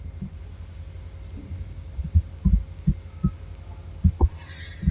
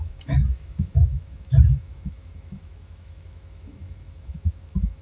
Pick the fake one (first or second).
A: second